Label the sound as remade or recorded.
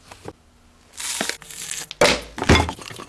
recorded